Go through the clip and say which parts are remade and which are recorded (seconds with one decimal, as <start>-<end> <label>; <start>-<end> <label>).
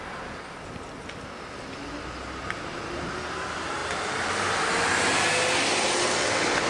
0.0-6.7 recorded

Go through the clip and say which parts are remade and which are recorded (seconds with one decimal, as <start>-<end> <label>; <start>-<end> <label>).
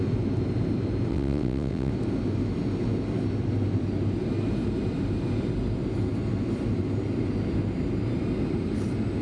0.0-1.1 recorded; 1.1-1.9 remade; 1.9-9.2 recorded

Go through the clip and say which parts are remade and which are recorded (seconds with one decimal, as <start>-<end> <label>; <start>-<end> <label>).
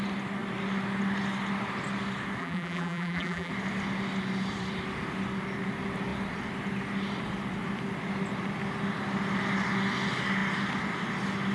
0.0-2.4 recorded; 2.4-3.5 remade; 3.5-11.5 recorded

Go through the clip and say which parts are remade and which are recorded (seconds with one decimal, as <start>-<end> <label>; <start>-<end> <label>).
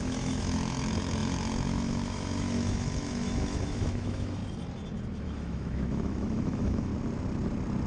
0.0-4.4 remade; 4.4-5.2 recorded; 5.2-6.9 remade; 6.9-7.9 recorded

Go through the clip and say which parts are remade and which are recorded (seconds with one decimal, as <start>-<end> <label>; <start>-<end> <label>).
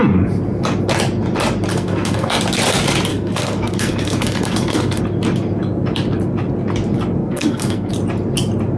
0.0-1.7 recorded; 1.7-2.4 remade; 2.4-3.1 recorded; 3.1-5.0 remade; 5.0-7.2 recorded; 7.2-7.9 remade; 7.9-8.8 recorded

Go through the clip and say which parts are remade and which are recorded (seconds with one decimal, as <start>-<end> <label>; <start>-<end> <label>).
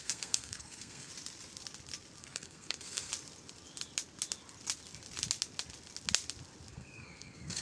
0.0-1.1 remade; 1.1-2.2 recorded; 2.2-3.1 remade; 3.1-6.7 recorded; 6.7-7.6 remade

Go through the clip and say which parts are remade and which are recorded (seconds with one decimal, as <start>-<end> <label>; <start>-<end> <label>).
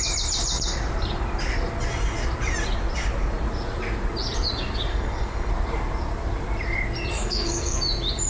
0.0-4.9 recorded; 4.9-5.5 remade; 5.5-7.1 recorded; 7.1-7.8 remade; 7.8-8.3 recorded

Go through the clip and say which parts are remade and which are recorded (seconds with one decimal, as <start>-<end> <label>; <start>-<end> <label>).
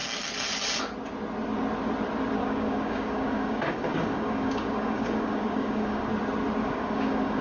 0.0-2.4 recorded; 2.4-6.1 remade; 6.1-6.6 recorded; 6.6-7.4 remade